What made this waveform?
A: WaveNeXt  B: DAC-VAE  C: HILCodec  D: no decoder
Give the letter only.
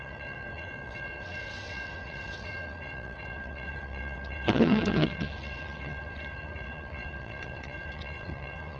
A